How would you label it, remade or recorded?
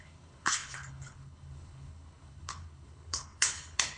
remade